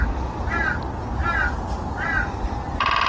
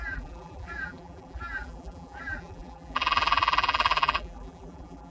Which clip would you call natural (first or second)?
first